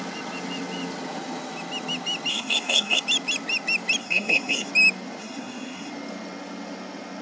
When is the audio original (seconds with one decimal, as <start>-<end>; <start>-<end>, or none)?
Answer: 0.0-2.3; 3.0-4.0; 4.7-5.2; 5.9-7.2